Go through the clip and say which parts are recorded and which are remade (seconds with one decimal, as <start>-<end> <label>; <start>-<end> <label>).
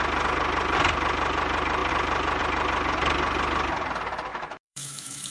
0.0-4.3 recorded; 4.3-5.3 remade